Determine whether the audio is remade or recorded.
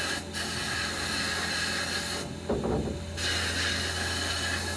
recorded